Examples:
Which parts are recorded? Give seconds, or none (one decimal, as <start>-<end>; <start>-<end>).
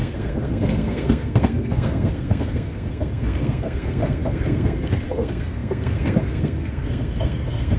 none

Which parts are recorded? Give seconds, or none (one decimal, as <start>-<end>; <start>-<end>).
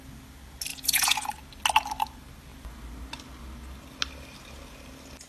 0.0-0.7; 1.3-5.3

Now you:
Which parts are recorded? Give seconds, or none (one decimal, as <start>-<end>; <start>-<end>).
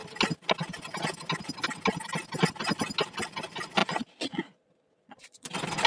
0.0-3.8; 5.5-5.9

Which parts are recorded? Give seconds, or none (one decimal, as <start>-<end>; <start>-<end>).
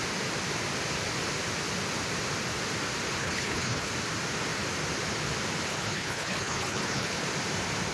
0.0-3.2; 3.9-5.7; 7.2-7.9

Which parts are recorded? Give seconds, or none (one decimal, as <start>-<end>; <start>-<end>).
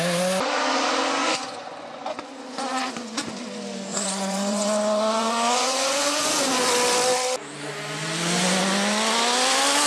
0.0-1.2; 3.2-3.9; 6.7-9.9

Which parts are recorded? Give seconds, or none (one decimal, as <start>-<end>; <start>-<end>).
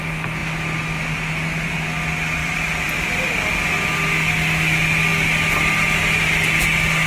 0.0-2.4; 3.1-7.1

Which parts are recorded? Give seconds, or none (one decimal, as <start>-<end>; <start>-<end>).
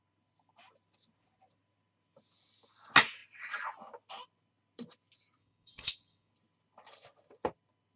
0.0-5.4; 6.3-8.0